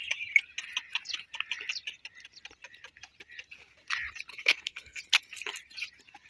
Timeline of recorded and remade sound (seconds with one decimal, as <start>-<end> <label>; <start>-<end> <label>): 0.0-4.3 recorded; 4.3-5.0 remade; 5.0-6.3 recorded